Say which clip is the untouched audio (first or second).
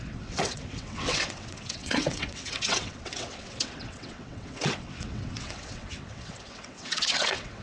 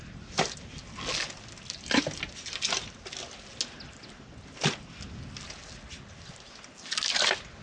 second